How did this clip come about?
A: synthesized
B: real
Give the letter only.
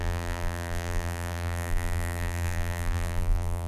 A